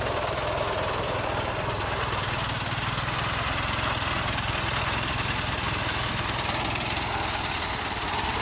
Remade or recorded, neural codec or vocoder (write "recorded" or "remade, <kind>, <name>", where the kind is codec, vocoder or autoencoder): recorded